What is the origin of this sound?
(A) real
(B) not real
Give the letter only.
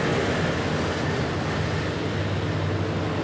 A